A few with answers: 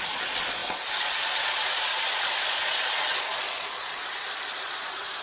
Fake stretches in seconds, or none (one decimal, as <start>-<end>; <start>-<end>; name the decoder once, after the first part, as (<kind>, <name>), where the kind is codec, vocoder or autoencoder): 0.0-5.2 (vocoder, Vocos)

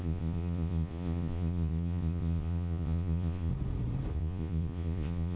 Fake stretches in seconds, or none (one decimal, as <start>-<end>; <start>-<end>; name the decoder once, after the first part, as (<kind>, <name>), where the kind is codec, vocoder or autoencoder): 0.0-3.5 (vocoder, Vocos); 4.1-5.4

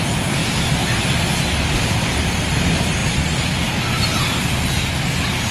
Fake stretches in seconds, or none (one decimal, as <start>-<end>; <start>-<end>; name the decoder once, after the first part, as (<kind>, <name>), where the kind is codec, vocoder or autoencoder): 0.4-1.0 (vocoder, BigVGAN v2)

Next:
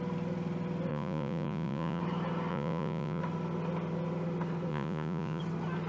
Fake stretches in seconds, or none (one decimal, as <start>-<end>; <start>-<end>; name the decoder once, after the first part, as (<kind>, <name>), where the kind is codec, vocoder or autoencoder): 0.9-2.0 (vocoder, Vocos); 2.5-3.2; 4.7-5.4

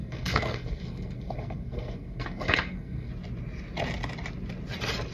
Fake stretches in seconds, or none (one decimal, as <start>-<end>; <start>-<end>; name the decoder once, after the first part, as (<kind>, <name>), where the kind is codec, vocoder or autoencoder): 0.0-3.1 (codec, SNAC)

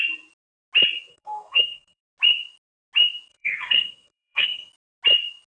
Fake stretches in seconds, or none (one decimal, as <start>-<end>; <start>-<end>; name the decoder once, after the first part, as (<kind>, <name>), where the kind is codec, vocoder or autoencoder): 1.1-2.0 (codec, SNAC); 3.3-4.7